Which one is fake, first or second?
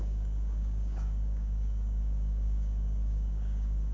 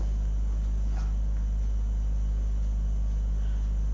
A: first